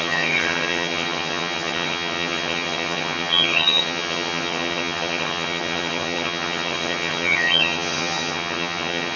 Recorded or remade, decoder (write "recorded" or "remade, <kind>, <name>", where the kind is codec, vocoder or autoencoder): remade, vocoder, HiFi-GAN